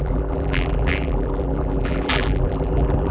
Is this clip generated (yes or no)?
yes